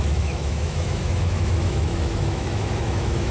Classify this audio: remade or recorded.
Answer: remade